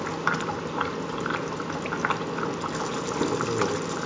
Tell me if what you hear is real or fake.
real